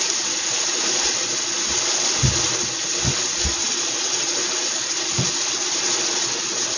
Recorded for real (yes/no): yes